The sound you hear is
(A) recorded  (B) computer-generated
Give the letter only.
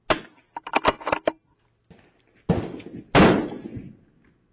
A